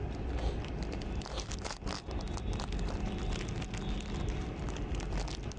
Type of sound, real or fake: real